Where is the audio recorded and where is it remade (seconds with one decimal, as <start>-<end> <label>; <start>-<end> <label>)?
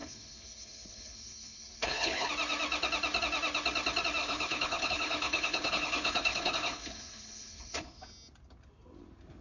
0.0-2.3 remade; 2.3-4.2 recorded; 4.2-8.0 remade; 8.0-9.4 recorded